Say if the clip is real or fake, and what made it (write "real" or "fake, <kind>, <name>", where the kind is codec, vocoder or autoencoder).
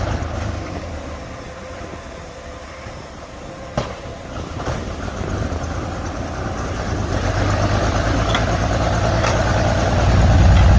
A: real